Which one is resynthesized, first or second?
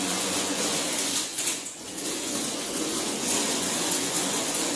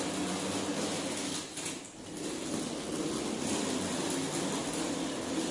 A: first